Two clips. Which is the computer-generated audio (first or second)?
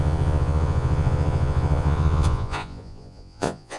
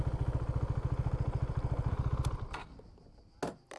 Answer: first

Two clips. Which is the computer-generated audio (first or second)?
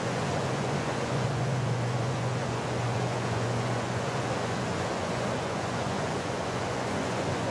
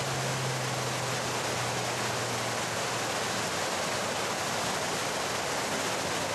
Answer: first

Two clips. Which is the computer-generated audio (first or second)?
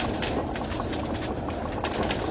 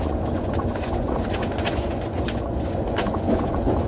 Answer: second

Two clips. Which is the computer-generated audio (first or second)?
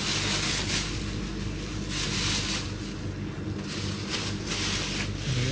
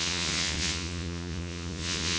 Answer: second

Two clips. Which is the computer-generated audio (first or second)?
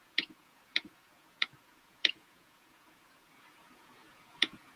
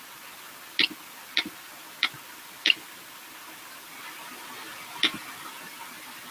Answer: first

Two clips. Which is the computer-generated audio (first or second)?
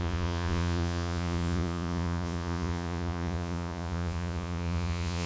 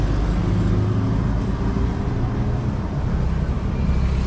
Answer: first